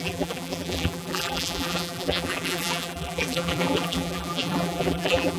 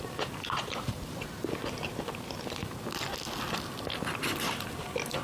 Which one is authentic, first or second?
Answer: second